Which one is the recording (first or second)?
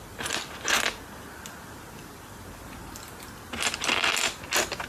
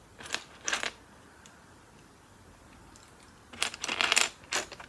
first